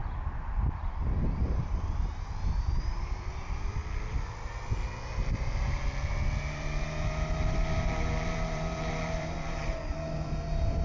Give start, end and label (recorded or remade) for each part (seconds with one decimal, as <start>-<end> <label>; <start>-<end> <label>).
0.0-1.0 recorded; 1.0-3.8 remade; 3.8-6.5 recorded; 6.5-10.8 remade